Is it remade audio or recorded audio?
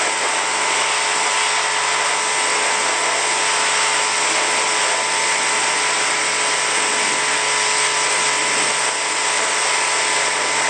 recorded